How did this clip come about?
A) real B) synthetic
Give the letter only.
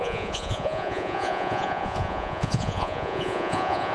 B